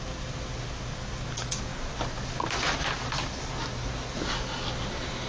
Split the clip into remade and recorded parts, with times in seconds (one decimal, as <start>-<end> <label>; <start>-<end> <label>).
0.0-5.3 recorded